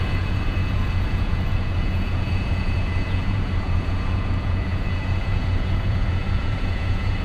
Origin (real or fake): fake